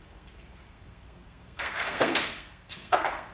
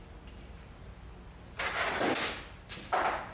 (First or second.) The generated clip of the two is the first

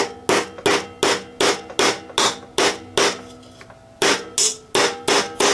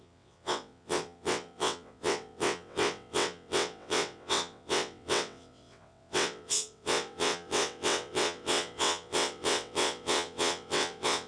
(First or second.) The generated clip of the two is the second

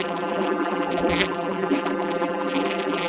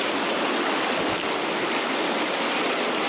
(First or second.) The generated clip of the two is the first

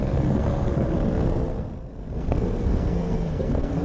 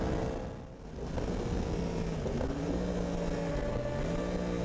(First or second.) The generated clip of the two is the first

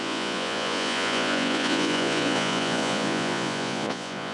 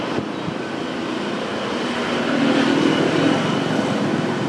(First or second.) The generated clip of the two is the first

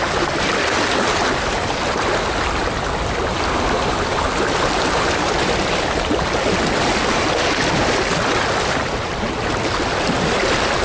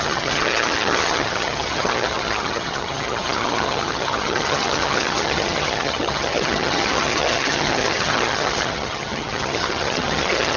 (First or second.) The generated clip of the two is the second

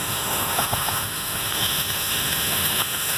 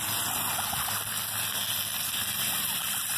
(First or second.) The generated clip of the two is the first